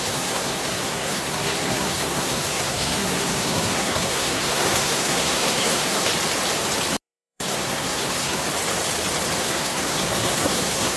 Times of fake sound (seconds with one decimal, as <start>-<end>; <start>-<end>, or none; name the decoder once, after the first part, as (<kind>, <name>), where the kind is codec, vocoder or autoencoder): 0.0-6.1 (codec, SNAC); 7.0-8.4; 9.4-11.0